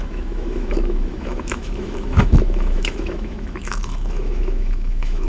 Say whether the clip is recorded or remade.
remade